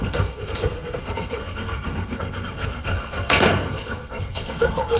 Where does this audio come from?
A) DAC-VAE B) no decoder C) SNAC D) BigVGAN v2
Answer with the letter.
C